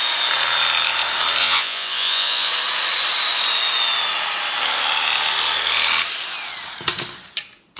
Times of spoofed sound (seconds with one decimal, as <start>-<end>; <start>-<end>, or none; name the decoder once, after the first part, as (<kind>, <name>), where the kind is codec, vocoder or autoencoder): 1.4-2.5 (vocoder, Vocos)